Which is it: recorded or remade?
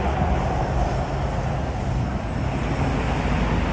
recorded